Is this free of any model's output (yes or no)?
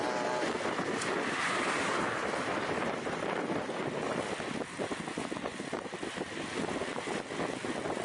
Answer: yes